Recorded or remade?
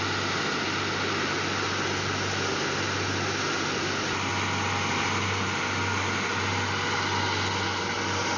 recorded